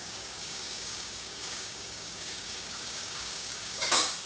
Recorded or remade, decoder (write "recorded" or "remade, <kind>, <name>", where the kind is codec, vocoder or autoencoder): remade, codec, DAC